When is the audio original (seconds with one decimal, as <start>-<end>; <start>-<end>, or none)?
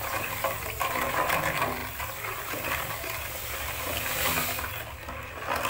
0.0-5.7